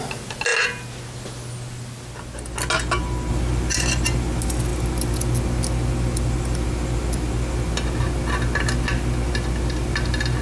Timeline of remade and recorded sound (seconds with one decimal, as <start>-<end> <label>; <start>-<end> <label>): 0.0-10.4 recorded